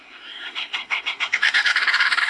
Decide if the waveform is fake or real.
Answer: fake